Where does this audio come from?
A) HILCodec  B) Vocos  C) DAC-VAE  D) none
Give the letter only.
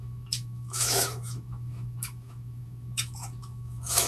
C